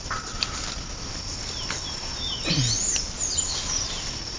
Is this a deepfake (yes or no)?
no